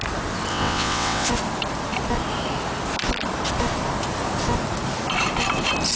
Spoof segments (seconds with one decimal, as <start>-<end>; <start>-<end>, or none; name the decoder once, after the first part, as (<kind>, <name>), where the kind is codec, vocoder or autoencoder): 0.5-1.3 (vocoder, WaveNeXt)